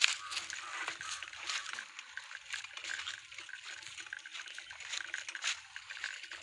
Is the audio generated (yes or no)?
no